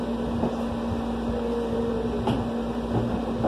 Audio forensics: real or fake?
real